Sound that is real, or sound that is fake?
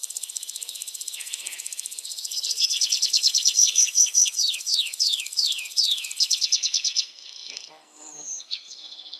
fake